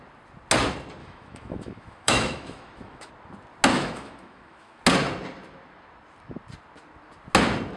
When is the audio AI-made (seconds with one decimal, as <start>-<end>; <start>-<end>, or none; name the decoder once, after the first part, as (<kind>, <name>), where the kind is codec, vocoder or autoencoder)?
1.0-3.1 (autoencoder, DAC-VAE); 3.7-4.8